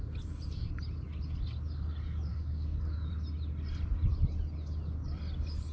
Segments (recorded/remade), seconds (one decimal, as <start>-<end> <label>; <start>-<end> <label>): 0.0-2.3 recorded; 2.3-3.1 remade; 3.1-5.7 recorded